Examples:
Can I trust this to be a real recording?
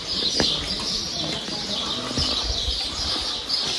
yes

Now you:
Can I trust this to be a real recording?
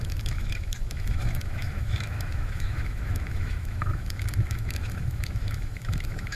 no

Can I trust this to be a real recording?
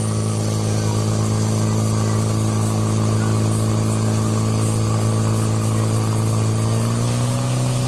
yes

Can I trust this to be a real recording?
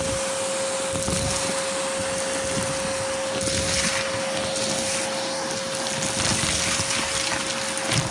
yes